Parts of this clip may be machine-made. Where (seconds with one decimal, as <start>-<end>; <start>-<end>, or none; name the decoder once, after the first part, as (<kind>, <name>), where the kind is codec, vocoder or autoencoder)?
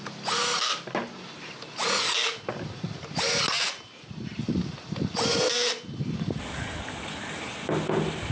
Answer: none